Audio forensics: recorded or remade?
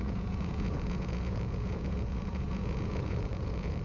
remade